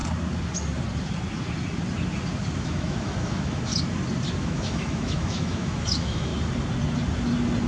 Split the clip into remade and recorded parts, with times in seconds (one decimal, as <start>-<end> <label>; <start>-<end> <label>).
0.0-2.6 recorded; 2.6-3.7 remade; 3.7-4.4 recorded; 4.4-6.3 remade; 6.3-7.7 recorded